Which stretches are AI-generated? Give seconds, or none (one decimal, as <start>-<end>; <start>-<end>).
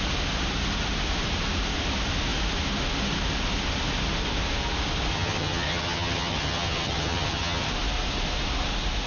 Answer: 5.1-7.7